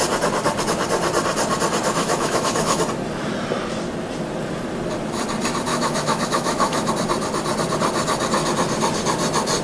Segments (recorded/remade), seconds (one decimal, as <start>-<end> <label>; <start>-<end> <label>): 0.0-2.0 recorded; 2.0-2.8 remade; 2.8-5.7 recorded; 5.7-6.9 remade; 6.9-9.6 recorded